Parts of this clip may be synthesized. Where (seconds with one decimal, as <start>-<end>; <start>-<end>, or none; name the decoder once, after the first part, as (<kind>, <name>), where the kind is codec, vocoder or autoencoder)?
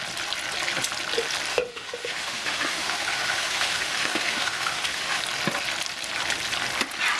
1.5-5.2 (autoencoder, DAC-VAE)